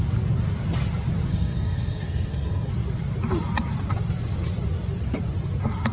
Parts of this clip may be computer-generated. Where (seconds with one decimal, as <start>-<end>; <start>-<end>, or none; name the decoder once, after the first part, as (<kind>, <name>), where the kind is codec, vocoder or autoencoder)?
1.3-2.7 (codec, SNAC)